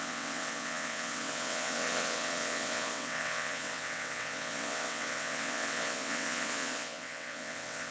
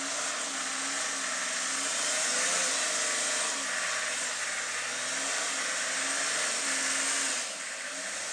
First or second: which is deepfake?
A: first